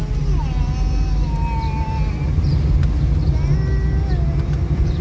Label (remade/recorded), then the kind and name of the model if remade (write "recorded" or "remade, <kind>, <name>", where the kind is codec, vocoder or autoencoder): recorded